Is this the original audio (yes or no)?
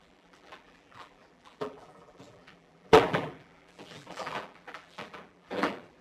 no